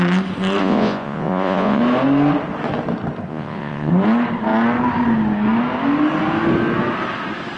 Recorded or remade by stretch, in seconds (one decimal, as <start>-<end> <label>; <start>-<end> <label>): 0.0-0.6 recorded; 0.6-1.8 remade; 1.8-3.3 recorded; 3.3-3.9 remade; 3.9-7.6 recorded